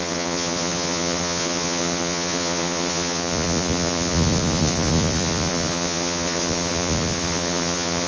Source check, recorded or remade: remade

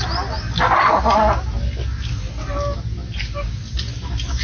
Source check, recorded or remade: recorded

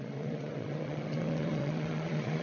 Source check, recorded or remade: remade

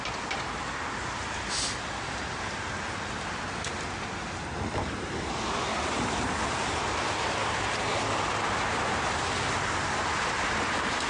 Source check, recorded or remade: recorded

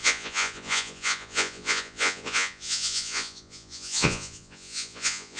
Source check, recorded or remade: remade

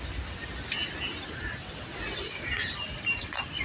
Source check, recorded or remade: recorded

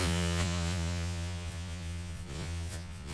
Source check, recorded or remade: remade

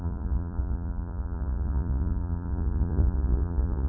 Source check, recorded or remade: remade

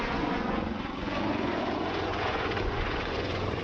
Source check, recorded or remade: remade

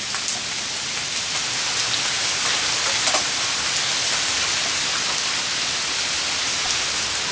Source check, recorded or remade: recorded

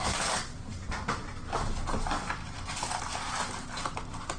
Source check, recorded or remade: recorded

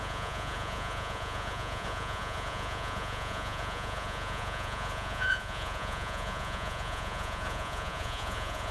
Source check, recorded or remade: remade